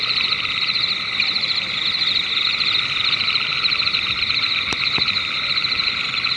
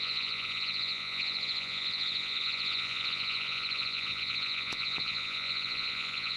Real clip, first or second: first